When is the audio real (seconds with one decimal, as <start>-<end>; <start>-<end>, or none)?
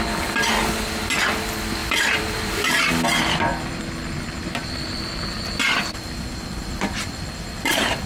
0.0-1.8; 2.9-3.5